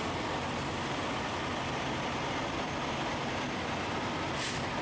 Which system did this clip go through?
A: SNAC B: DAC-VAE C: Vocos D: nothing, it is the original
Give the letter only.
D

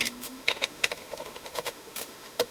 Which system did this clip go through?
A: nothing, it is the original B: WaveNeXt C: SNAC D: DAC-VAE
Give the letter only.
D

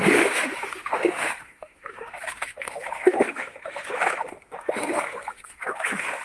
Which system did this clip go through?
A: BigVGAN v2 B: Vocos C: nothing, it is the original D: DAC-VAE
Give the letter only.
D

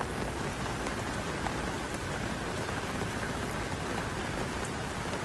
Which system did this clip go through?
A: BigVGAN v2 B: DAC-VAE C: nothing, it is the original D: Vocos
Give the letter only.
C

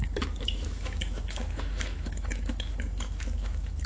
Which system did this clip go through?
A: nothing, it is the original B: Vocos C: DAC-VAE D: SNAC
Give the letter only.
C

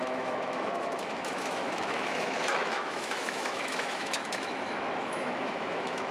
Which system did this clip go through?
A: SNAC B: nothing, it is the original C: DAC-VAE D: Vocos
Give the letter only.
C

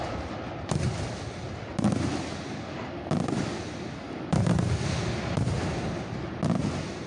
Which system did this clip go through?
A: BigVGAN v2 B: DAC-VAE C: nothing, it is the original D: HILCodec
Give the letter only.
C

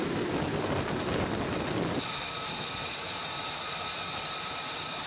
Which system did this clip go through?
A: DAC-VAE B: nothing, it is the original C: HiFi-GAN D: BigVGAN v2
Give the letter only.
B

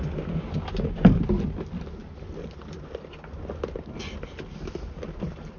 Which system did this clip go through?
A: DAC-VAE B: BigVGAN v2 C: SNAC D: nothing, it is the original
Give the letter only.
D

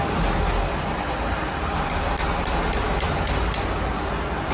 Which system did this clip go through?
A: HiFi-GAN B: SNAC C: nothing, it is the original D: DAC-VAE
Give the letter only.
C